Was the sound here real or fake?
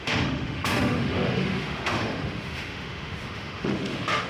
fake